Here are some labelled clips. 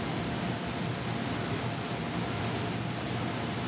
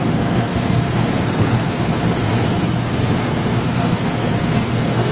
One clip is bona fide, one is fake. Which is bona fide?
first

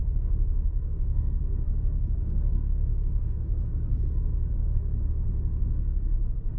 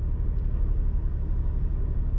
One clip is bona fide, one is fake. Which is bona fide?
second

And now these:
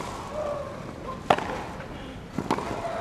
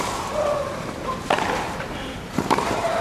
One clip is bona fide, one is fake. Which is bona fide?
first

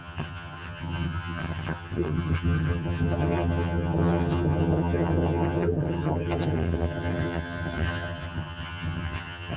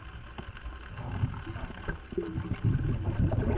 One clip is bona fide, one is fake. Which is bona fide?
second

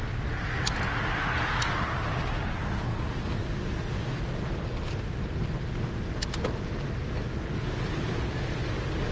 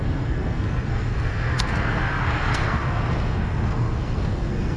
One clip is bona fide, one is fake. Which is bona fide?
first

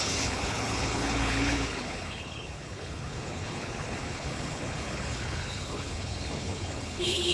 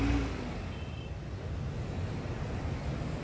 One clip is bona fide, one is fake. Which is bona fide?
second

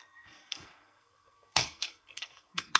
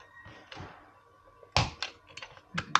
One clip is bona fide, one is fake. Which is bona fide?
second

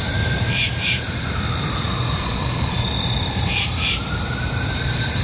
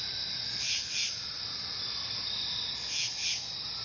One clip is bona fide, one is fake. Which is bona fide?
second